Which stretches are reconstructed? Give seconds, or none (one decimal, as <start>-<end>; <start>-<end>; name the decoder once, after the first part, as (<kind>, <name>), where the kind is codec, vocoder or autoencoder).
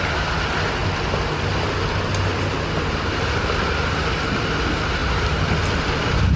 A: 0.8-1.5 (vocoder, BigVGAN v2); 5.0-6.4